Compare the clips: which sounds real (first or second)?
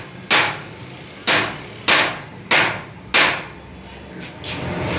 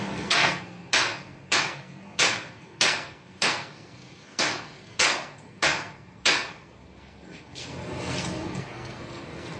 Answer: first